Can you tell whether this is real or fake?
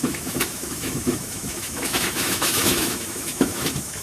fake